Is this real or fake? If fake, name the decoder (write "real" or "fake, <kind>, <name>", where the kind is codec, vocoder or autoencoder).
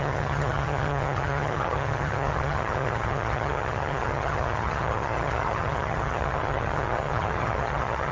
fake, vocoder, HiFi-GAN